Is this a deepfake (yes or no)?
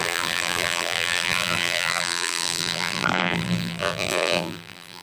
yes